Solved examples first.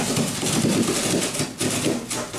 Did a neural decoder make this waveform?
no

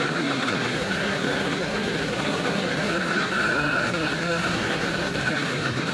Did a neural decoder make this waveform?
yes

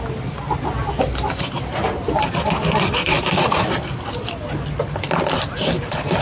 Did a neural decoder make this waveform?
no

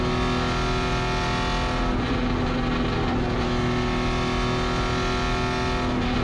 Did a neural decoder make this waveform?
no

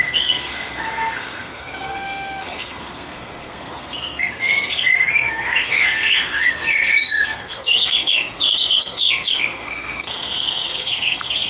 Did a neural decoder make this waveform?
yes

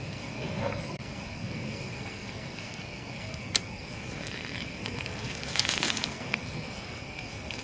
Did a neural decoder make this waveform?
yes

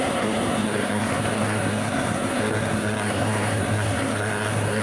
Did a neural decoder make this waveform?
yes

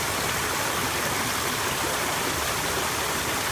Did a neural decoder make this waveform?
no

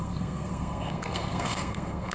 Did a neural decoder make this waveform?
yes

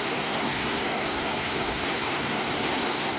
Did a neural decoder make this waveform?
yes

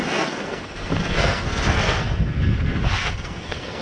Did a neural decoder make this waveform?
yes